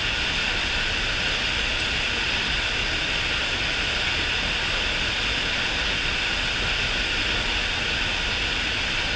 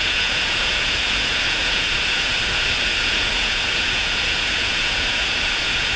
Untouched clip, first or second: first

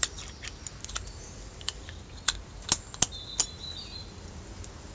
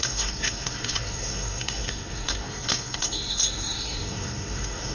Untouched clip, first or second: first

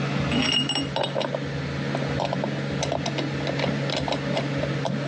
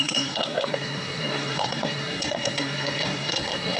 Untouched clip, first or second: first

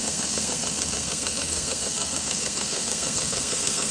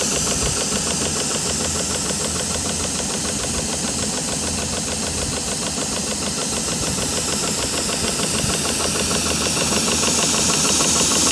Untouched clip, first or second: second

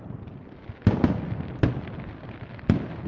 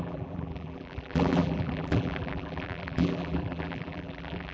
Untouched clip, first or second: first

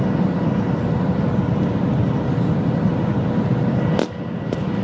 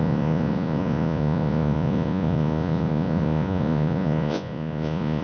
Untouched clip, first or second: first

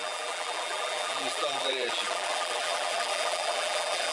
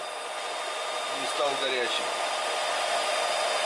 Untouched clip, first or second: second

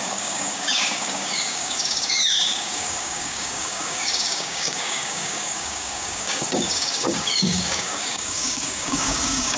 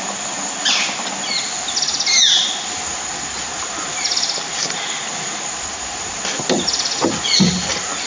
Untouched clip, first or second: second